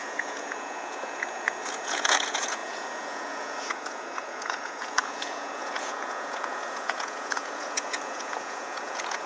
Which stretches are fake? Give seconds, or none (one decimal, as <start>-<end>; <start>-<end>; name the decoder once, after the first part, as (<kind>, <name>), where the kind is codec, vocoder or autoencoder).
0.0-9.3 (vocoder, Vocos)